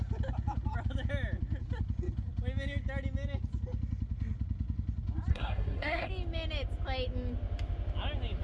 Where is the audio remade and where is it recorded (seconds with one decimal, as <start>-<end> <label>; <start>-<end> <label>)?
0.0-5.3 recorded; 5.3-6.1 remade; 6.1-8.4 recorded